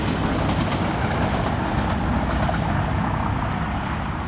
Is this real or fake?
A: real